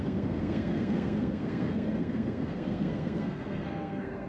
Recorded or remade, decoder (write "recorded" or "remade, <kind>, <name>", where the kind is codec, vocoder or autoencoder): remade, codec, SNAC